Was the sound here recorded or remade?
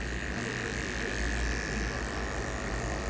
recorded